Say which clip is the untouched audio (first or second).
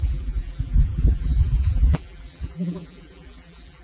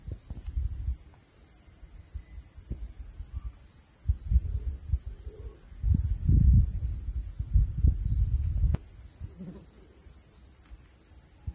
second